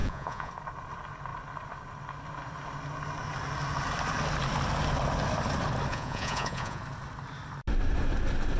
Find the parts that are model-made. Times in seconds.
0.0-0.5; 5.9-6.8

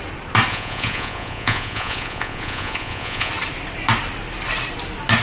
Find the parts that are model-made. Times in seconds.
0.5-3.3

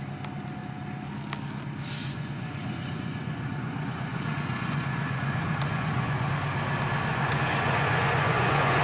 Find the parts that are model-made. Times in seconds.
2.0-6.3; 7.1-8.8